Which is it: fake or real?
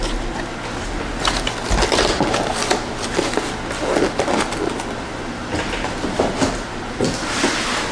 real